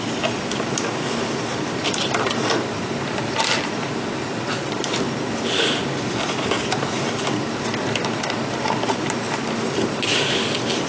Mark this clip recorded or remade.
recorded